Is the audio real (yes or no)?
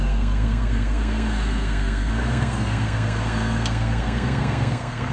no